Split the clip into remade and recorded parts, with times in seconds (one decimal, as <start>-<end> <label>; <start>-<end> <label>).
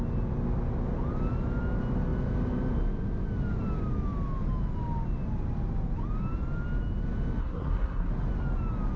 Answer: 0.0-7.4 recorded; 7.4-8.1 remade; 8.1-9.0 recorded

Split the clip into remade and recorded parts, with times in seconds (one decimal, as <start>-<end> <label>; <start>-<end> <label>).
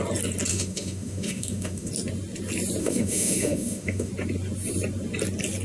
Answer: 0.0-0.5 recorded; 0.5-1.9 remade; 1.9-2.8 recorded; 2.8-4.1 remade; 4.1-5.6 recorded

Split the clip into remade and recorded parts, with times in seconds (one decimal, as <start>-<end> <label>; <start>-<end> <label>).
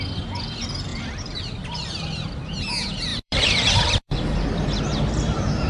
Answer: 0.0-0.9 recorded; 0.9-1.9 remade; 1.9-3.1 recorded; 3.1-4.8 remade; 4.8-5.7 recorded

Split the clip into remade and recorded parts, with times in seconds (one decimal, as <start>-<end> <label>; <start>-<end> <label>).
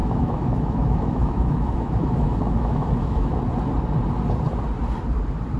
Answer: 0.0-3.4 remade; 3.4-5.6 recorded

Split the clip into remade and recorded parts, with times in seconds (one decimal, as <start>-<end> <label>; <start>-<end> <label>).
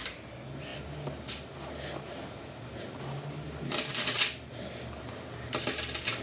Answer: 0.0-6.2 recorded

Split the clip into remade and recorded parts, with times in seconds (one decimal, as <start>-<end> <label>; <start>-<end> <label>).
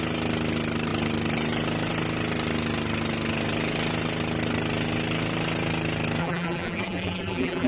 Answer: 0.0-6.2 recorded; 6.2-7.7 remade